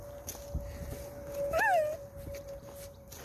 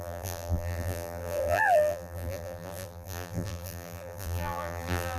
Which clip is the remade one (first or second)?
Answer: second